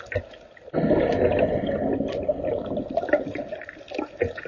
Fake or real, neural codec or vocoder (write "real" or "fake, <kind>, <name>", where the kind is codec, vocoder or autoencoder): real